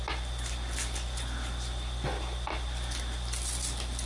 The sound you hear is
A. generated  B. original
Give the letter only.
B